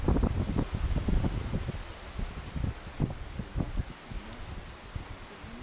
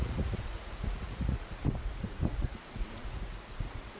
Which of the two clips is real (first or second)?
first